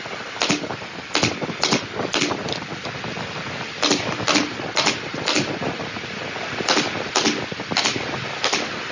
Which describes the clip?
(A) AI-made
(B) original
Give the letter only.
B